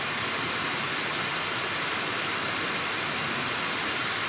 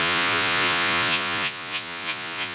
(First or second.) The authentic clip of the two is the first